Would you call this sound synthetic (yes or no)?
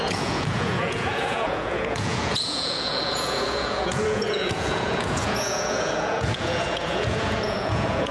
yes